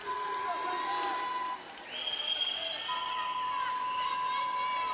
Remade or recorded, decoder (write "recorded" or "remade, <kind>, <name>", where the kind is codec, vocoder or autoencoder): recorded